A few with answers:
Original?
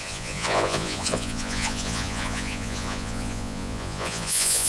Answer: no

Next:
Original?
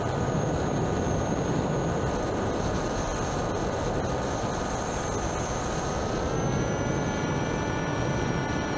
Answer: yes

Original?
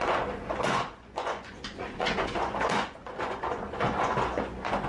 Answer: no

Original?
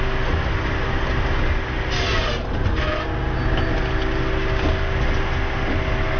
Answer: yes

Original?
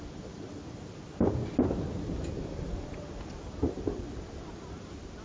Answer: yes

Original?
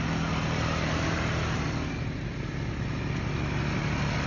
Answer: yes